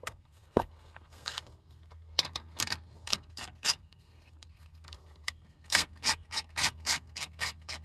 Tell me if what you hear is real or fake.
fake